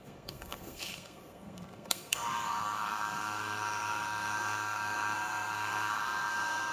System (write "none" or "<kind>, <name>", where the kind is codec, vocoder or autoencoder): codec, SNAC